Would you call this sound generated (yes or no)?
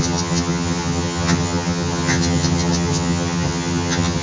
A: yes